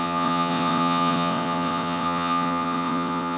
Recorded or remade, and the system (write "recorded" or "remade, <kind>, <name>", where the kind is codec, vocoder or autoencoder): remade, vocoder, WaveNeXt